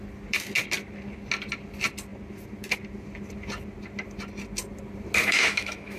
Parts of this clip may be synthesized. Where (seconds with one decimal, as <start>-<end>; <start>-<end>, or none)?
5.2-6.0